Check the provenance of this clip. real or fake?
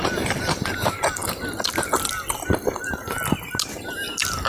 real